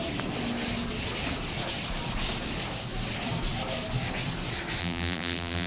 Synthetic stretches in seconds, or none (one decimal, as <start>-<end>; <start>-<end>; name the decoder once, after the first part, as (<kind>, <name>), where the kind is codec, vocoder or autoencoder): 4.8-5.7 (vocoder, BigVGAN v2)